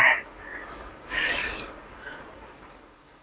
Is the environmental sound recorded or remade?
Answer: remade